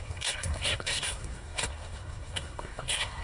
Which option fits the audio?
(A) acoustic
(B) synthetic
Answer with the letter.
B